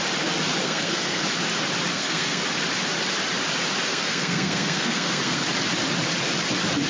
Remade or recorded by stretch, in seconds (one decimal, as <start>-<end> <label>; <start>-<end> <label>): 0.0-0.6 recorded; 0.6-1.2 remade; 1.2-1.9 recorded; 1.9-2.4 remade; 2.4-3.9 recorded; 3.9-5.4 remade; 5.4-6.9 recorded